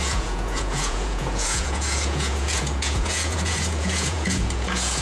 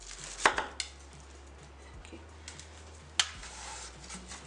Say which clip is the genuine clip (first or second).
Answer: second